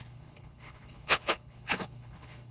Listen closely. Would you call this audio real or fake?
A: fake